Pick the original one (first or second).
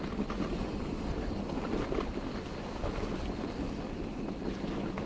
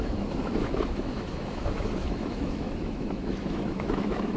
first